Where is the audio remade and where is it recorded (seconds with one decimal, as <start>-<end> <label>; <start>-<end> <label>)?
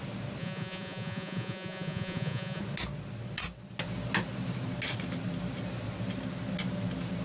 0.0-0.4 recorded; 0.4-2.6 remade; 2.6-7.2 recorded